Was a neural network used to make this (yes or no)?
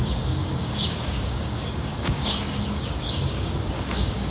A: yes